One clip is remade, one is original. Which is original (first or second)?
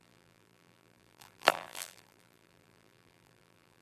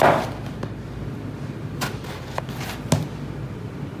second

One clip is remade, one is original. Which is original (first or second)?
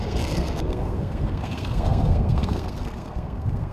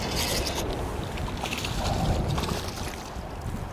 second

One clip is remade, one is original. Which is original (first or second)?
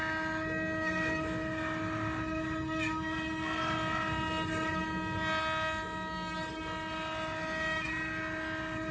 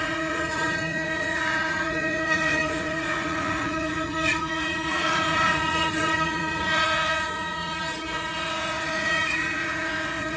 first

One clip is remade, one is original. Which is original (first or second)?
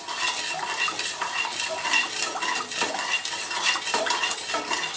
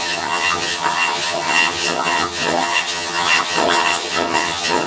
first